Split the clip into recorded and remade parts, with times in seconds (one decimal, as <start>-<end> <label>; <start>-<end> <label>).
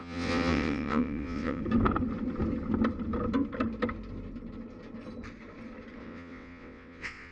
0.0-1.6 remade; 1.6-6.0 recorded; 6.0-7.3 remade